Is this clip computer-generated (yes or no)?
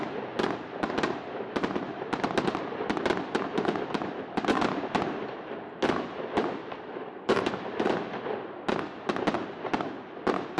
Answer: no